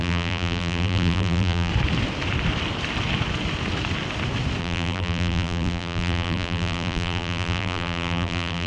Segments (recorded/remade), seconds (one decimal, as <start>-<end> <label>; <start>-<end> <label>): 0.0-1.7 remade; 1.7-4.6 recorded; 4.6-8.7 remade